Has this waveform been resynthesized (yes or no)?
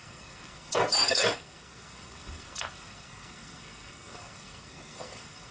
yes